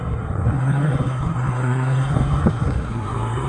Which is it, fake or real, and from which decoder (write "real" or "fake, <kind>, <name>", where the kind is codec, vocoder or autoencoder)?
fake, codec, SNAC